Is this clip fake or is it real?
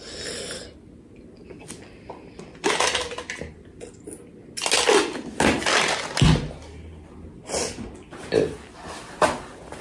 real